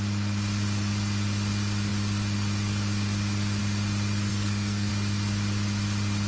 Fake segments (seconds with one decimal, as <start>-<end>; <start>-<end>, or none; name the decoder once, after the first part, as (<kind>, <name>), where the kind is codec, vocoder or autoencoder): 4.3-4.9 (codec, SNAC)